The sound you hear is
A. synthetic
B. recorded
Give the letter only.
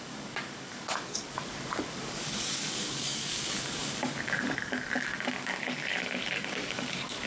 A